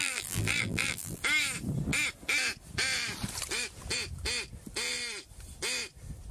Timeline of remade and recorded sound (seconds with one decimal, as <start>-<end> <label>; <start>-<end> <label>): 0.0-1.2 remade; 1.2-6.3 recorded